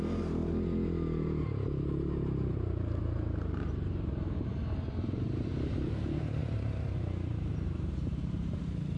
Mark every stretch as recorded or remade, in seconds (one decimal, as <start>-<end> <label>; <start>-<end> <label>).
0.0-0.4 remade; 0.4-1.2 recorded; 1.2-9.0 remade